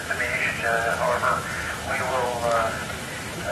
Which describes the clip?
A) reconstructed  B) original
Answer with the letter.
A